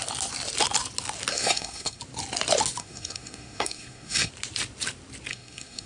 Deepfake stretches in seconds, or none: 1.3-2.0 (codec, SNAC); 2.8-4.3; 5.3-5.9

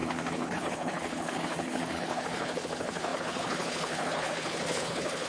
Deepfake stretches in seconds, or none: 0.0-5.3 (codec, HILCodec)

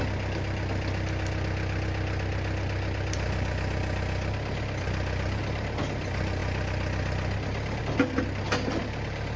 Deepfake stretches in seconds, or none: none

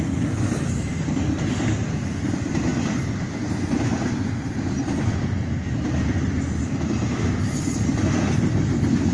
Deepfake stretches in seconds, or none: none

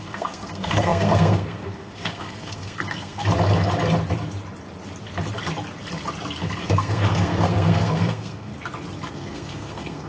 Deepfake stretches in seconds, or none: 0.0-3.2 (codec, SNAC); 6.6-8.5; 9.1-10.1

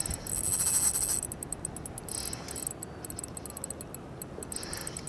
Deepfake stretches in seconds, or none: none

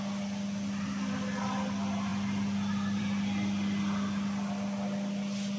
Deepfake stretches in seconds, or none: none